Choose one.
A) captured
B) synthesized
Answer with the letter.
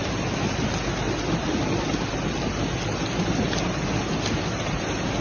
A